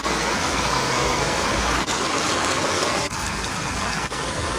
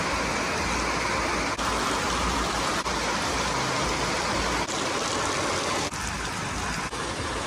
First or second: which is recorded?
second